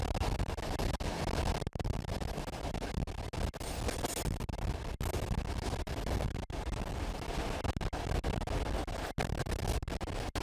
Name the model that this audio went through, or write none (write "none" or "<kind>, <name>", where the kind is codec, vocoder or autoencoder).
none